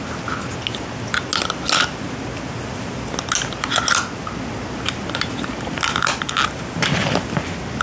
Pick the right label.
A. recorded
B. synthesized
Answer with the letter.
A